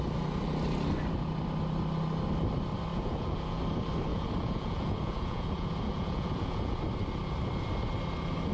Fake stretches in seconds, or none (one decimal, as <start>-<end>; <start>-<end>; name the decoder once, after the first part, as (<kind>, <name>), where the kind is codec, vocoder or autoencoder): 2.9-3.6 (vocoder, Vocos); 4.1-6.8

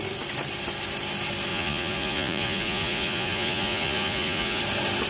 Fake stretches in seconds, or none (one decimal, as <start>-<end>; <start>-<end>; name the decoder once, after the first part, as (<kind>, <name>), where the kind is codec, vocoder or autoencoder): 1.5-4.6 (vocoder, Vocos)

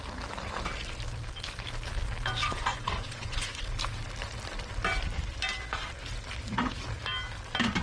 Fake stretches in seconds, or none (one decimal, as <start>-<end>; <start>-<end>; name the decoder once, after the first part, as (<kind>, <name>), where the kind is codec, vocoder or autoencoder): 2.4-3.6 (vocoder, Vocos)

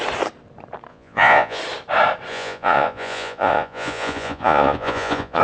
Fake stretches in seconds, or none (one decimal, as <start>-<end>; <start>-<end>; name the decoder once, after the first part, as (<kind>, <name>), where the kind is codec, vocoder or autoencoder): 0.9-1.6 (vocoder, Vocos); 2.3-5.4